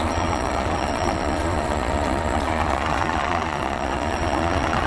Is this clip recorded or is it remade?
remade